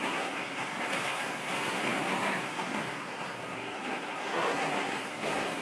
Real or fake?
fake